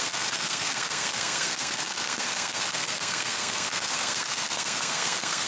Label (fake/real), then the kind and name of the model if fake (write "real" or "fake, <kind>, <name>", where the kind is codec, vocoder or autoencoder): fake, codec, SNAC